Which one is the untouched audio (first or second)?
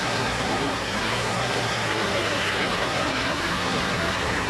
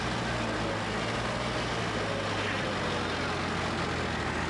second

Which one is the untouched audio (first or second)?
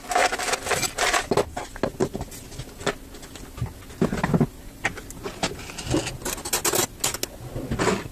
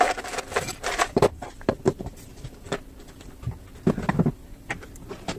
first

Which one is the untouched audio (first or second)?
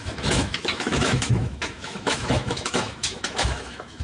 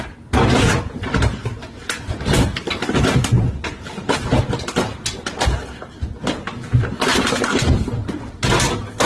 second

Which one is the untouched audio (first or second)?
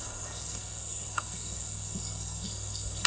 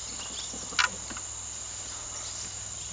second